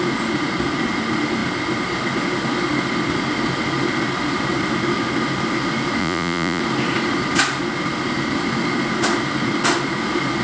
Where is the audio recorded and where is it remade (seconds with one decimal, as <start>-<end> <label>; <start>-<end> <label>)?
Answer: 0.0-6.0 recorded; 6.0-6.6 remade; 6.6-10.4 recorded